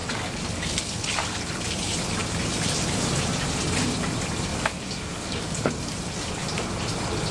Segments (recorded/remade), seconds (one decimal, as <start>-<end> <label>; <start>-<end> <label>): 0.0-0.8 remade; 0.8-4.5 recorded; 4.5-5.7 remade; 5.7-7.3 recorded

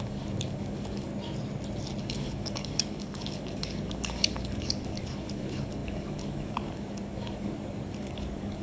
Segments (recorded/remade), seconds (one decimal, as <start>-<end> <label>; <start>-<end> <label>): 0.0-1.1 remade; 1.1-2.0 recorded; 2.0-8.6 remade

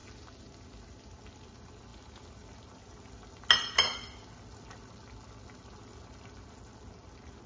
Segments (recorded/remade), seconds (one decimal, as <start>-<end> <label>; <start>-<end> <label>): 0.0-7.5 recorded